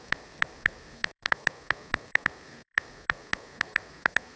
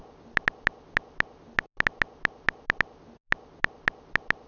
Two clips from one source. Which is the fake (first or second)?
first